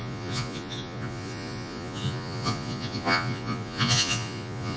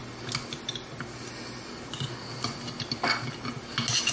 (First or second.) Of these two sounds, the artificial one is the first